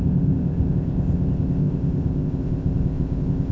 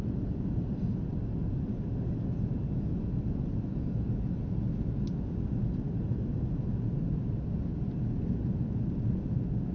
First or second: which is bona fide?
second